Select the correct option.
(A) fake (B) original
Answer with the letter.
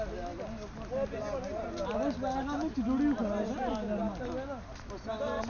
B